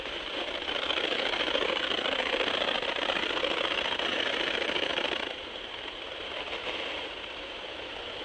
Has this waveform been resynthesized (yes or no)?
yes